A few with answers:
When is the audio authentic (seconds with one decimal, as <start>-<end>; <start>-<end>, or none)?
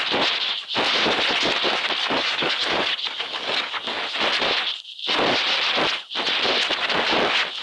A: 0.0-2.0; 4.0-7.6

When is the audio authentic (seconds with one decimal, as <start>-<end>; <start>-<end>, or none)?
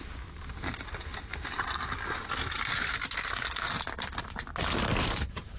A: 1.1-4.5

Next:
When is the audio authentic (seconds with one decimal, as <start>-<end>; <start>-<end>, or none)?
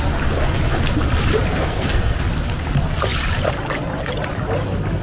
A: 0.0-1.5; 2.2-5.0